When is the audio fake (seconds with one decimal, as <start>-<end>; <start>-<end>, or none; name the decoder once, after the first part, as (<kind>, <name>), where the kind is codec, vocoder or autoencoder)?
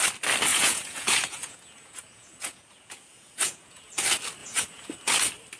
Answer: 0.5-3.9 (vocoder, Vocos); 4.4-4.9